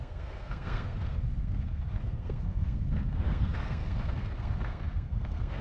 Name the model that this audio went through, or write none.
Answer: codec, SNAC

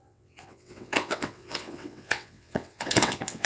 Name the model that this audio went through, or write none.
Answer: vocoder, WaveNeXt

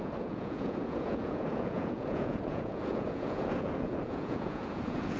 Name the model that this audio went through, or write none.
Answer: vocoder, Vocos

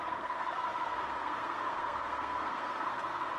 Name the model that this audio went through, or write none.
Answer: codec, SNAC